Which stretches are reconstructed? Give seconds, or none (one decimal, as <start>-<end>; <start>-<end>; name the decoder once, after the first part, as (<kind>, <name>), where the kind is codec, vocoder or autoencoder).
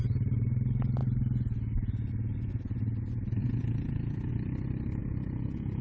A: 3.4-4.3 (vocoder, Vocos); 5.0-5.8